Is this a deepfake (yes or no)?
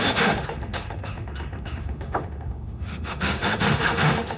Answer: yes